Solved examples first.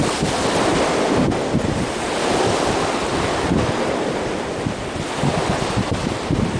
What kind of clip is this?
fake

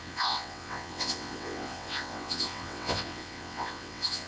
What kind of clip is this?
fake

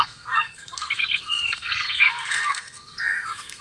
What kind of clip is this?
fake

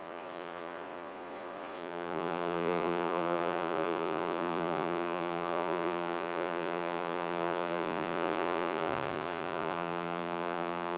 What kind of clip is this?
fake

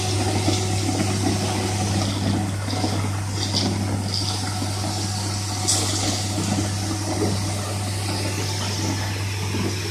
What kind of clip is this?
real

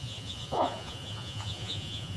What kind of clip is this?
fake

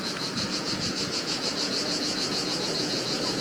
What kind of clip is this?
fake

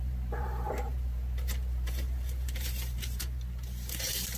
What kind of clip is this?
fake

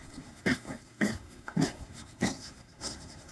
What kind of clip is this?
fake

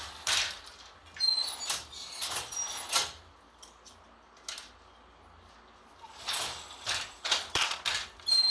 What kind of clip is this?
real